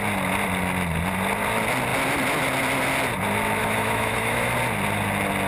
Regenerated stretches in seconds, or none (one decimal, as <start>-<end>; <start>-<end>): 3.6-4.5